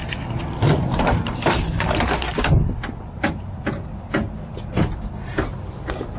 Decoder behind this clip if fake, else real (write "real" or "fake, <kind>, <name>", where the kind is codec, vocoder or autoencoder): real